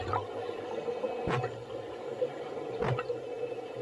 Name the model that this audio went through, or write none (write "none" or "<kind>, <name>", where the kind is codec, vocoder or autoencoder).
none